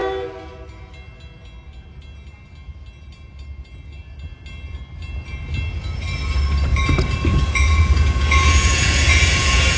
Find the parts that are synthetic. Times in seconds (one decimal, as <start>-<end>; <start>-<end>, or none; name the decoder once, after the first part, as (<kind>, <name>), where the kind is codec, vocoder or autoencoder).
7.3-9.8 (vocoder, Vocos)